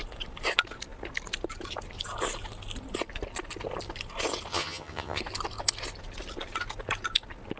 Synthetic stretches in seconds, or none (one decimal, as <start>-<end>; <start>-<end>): 4.5-5.2